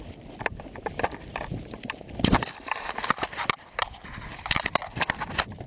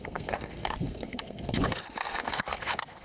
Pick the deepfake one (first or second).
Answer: second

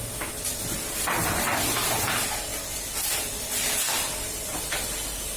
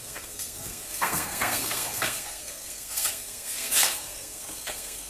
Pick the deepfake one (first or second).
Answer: second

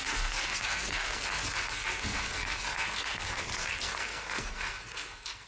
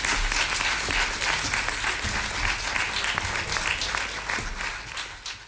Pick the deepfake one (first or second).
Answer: first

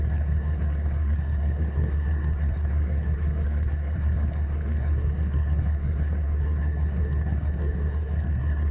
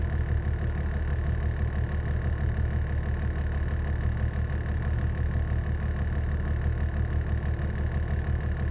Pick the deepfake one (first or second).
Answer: first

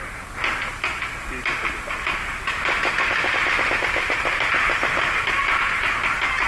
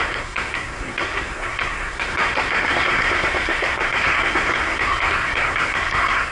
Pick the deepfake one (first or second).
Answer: second